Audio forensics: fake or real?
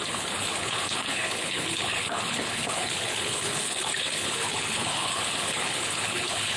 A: fake